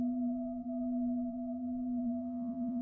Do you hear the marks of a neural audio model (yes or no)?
yes